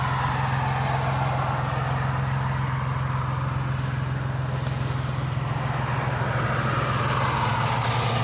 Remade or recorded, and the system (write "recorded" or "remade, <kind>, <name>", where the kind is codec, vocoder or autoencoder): recorded